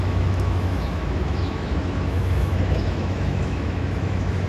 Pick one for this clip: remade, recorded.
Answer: remade